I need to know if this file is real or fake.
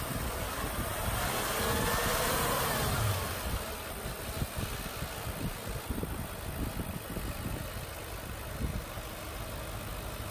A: real